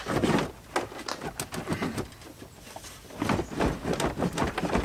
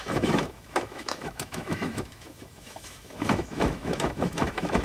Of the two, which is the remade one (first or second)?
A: second